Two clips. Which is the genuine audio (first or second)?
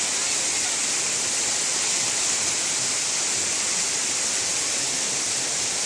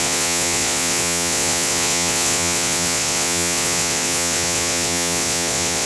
first